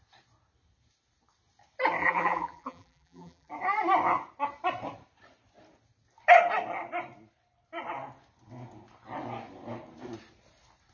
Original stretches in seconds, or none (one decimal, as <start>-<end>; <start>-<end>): 0.0-2.0; 3.5-10.9